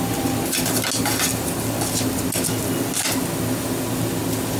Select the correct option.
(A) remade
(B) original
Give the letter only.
B